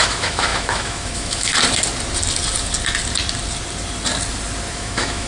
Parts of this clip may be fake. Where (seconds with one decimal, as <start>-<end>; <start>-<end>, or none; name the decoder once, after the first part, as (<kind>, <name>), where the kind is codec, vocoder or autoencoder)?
0.0-1.5 (autoencoder, DAC-VAE); 4.7-5.3